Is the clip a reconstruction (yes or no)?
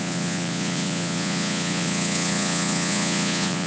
yes